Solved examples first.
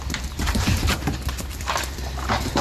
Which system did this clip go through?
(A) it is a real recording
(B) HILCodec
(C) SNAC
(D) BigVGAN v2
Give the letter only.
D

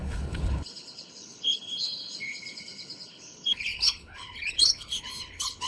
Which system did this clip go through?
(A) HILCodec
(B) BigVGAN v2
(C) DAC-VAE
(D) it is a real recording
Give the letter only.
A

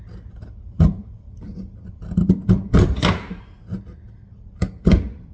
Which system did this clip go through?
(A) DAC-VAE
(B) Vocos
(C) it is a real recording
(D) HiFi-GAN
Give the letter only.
C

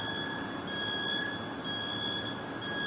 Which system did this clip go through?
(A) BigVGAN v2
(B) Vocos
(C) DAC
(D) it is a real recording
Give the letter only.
D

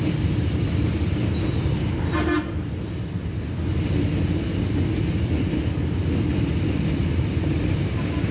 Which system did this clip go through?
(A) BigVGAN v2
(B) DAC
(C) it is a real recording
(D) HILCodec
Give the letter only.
C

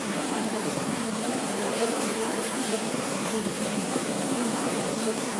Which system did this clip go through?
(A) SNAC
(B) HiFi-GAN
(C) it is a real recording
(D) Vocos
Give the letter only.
A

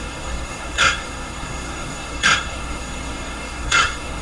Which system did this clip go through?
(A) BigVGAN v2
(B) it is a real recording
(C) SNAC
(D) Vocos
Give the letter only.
C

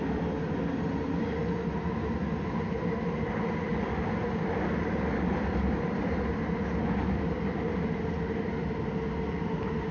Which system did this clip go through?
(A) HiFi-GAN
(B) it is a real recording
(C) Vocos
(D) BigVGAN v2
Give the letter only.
B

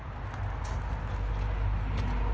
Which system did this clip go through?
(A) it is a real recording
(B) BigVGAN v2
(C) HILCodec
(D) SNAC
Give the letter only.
A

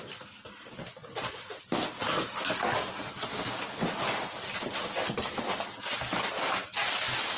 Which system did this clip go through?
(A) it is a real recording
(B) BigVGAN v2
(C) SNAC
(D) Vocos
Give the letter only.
A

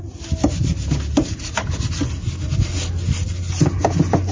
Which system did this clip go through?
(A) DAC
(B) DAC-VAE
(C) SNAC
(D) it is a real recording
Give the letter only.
D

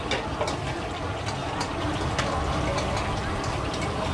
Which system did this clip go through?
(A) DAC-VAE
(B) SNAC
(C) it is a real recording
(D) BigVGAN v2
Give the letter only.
C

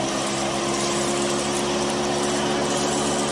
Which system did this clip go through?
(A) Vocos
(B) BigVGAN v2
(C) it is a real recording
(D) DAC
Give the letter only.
C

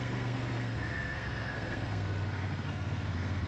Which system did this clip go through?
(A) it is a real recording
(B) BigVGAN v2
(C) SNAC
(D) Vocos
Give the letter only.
C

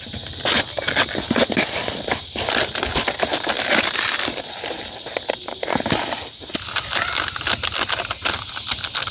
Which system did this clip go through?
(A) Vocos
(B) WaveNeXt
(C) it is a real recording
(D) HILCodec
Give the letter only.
C